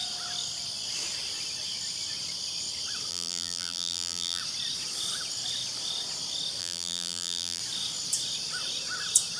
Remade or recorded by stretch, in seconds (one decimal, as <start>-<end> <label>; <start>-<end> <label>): 0.0-3.1 recorded; 3.1-4.4 remade; 4.4-6.6 recorded; 6.6-7.6 remade; 7.6-9.4 recorded